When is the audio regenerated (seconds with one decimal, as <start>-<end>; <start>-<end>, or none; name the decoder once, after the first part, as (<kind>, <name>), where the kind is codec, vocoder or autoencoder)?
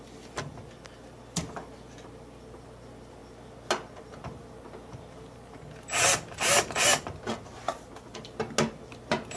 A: none